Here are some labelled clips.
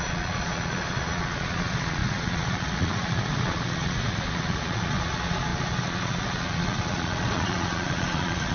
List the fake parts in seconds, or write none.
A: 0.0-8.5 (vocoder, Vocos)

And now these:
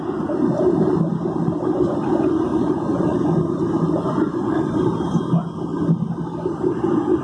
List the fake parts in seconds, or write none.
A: 2.5-4.7 (vocoder, Vocos)